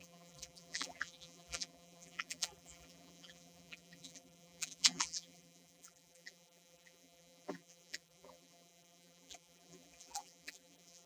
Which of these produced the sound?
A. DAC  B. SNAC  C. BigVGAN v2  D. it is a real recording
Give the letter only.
C